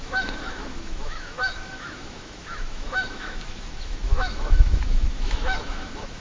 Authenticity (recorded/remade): remade